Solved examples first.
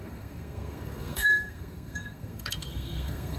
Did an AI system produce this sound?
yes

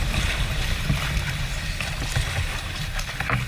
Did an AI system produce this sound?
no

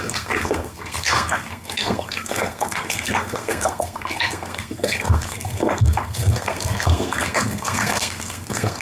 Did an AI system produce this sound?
yes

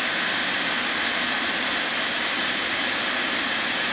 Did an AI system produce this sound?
yes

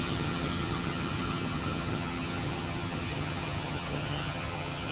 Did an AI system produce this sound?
yes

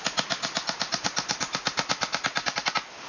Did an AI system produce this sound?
no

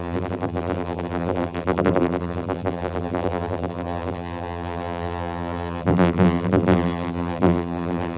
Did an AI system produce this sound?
yes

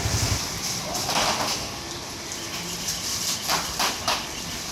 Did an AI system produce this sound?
no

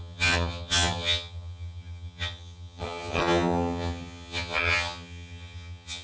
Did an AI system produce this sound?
yes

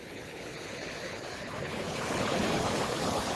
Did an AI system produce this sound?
yes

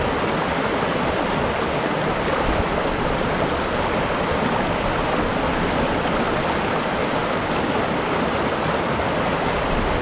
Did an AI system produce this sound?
no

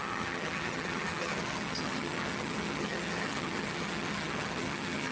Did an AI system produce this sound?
yes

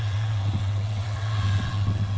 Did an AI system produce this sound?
yes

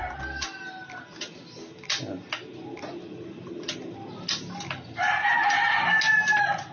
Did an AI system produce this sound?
no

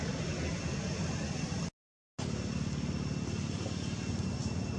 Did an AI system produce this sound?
no